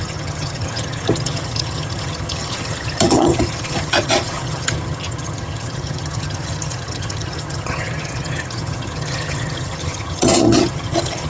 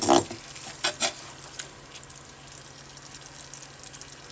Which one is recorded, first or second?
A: second